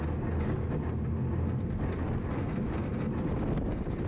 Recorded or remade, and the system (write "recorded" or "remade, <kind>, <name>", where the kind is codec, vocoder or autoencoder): recorded